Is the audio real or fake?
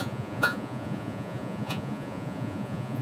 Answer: fake